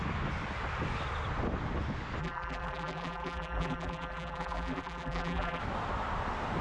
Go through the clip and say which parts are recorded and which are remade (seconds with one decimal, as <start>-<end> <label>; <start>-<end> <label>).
0.0-2.2 recorded; 2.2-5.6 remade; 5.6-6.6 recorded